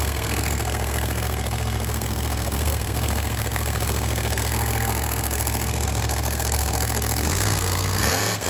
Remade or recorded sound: remade